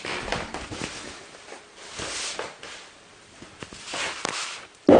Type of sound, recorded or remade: recorded